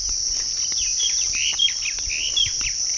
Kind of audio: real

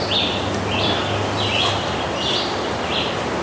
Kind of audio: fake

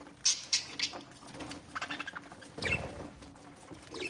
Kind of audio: real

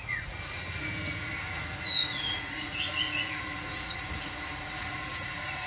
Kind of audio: fake